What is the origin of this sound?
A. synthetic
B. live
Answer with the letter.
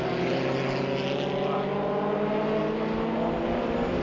B